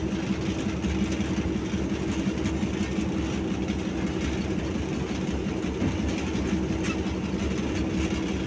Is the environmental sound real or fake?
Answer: real